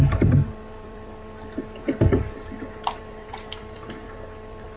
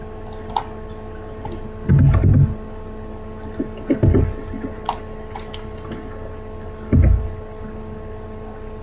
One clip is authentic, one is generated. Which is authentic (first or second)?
second